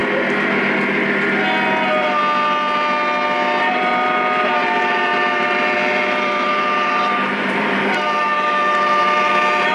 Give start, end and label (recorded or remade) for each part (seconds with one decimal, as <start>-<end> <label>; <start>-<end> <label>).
0.0-3.7 recorded; 3.7-9.7 remade